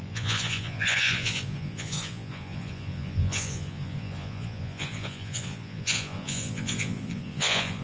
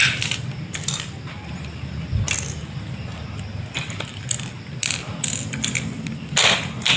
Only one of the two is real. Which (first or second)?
second